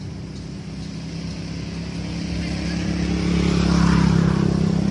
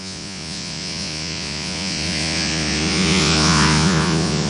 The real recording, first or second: first